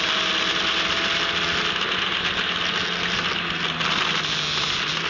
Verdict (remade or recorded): recorded